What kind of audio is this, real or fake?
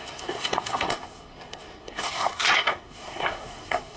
fake